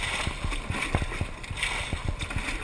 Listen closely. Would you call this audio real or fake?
real